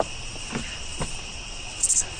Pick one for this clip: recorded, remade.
recorded